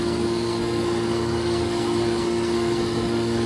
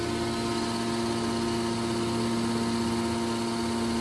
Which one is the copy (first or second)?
first